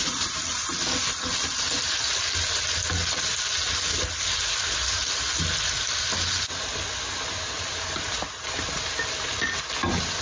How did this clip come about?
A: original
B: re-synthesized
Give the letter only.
A